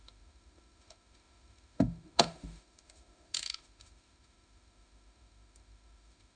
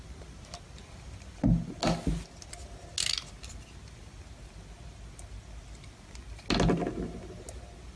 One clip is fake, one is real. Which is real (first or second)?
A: second